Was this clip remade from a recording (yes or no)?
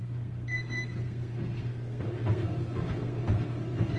yes